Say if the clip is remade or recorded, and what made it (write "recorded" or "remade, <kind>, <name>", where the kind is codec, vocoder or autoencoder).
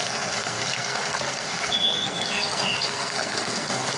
remade, codec, SNAC